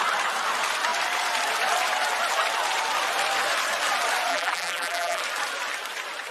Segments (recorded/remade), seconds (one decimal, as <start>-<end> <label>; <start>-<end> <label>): 0.0-4.3 recorded; 4.3-5.2 remade; 5.2-6.3 recorded